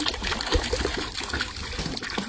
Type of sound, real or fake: real